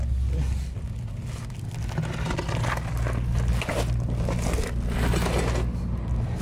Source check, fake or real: real